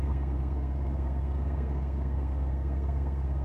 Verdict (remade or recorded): remade